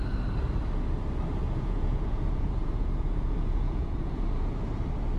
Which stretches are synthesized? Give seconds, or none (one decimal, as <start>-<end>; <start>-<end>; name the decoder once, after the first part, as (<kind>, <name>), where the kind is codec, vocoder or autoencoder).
1.4-4.5 (vocoder, Vocos)

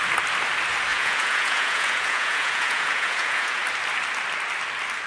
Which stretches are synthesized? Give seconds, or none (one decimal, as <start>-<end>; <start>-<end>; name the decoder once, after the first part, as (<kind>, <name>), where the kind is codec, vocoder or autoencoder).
0.9-3.6 (vocoder, Vocos)

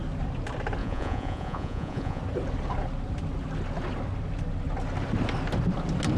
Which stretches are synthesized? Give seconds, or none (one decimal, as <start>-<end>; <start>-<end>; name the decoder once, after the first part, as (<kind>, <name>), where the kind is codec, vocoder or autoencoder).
0.8-2.2 (vocoder, Vocos)

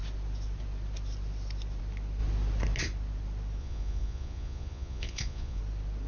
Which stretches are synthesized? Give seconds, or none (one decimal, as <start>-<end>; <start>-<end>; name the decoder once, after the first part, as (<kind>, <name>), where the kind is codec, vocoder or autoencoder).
3.6-5.6 (vocoder, Vocos)

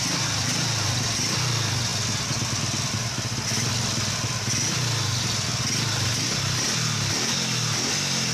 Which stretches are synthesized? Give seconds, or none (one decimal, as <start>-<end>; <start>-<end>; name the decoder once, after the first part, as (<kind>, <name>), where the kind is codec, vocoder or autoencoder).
none